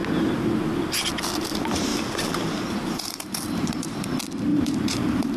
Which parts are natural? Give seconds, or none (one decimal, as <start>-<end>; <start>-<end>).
0.0-1.9; 4.1-4.5